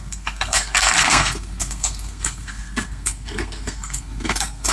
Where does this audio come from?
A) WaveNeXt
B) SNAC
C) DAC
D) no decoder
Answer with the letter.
B